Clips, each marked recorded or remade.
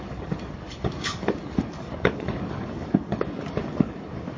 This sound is remade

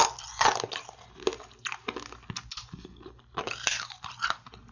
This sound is recorded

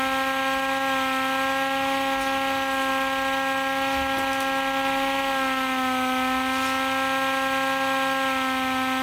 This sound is recorded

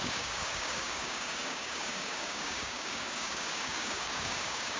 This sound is remade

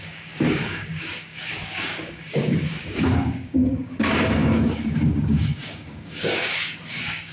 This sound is remade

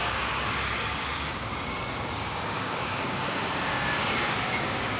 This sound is remade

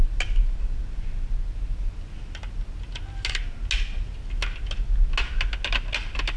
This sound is recorded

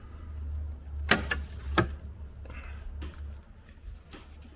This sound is recorded